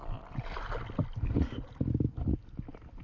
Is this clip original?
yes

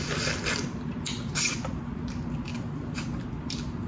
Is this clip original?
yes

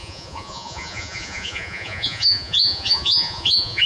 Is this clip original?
no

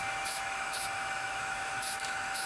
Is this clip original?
no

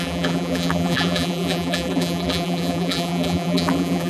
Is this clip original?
no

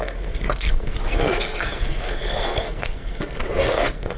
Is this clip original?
no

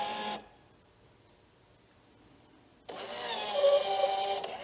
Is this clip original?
yes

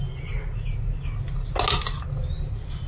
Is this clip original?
yes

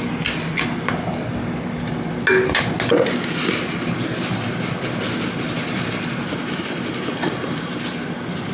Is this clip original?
yes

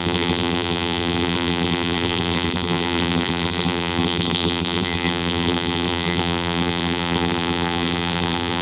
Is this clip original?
no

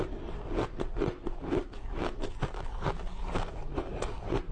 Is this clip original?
yes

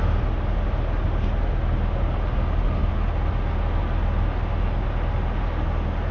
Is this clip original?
yes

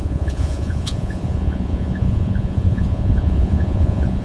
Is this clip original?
no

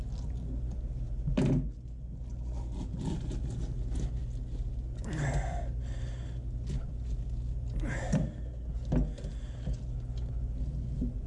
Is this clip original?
yes